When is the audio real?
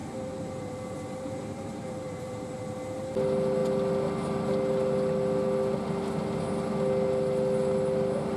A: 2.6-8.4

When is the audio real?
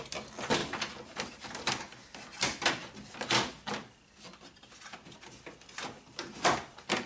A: 0.0-7.1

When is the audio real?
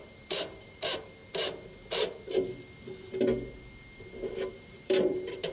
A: 1.2-4.5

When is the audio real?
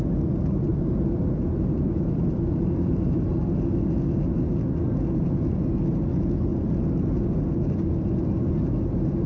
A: 0.0-0.7; 3.3-9.3